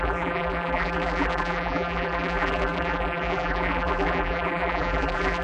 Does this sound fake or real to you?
fake